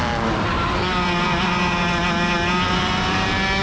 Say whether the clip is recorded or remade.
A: recorded